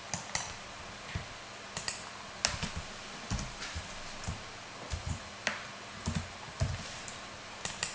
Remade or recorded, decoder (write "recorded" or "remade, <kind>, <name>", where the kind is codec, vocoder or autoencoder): recorded